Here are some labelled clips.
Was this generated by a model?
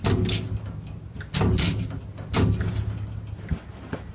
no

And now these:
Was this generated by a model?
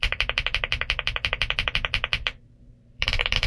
yes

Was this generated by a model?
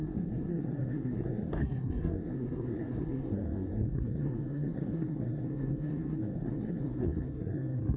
yes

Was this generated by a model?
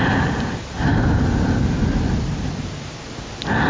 no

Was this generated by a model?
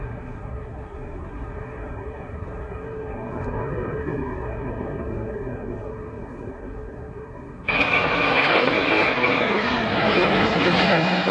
yes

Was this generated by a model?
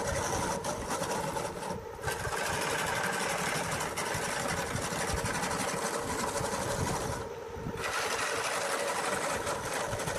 no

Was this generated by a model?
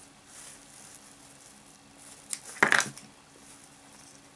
no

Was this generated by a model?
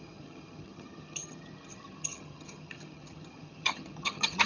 yes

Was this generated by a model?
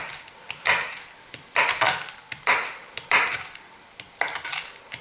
no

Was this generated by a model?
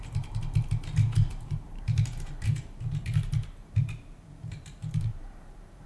yes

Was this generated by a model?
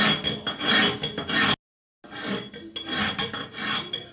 no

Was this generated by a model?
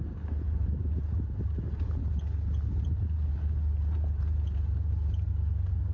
no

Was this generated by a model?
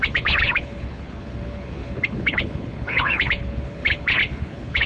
yes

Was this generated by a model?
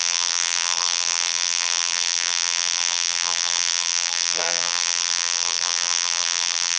yes